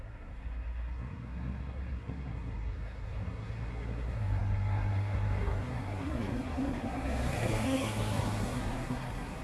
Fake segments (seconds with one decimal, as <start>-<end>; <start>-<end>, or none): 0.0-9.4